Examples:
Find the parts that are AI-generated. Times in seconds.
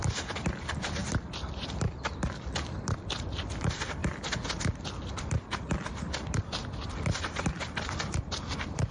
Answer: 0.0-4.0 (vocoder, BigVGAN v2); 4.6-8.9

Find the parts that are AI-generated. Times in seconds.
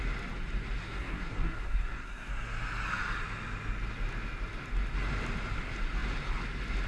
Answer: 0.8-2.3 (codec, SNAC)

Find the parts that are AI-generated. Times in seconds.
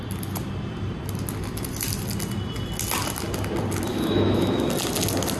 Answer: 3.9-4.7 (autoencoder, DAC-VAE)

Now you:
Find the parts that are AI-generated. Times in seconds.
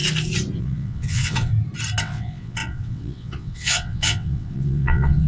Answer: 0.6-1.5 (vocoder, WaveNeXt); 2.0-5.3